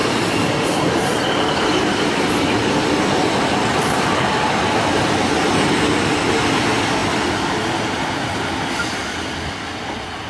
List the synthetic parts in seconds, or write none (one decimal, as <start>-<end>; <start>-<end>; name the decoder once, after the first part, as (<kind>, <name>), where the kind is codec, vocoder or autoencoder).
none